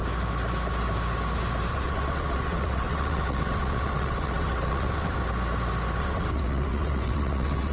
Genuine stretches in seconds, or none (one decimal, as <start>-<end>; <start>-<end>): 0.0-1.7; 5.2-6.0